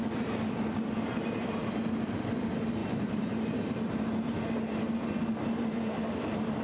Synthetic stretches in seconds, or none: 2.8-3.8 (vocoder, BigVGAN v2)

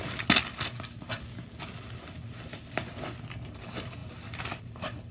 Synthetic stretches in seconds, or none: none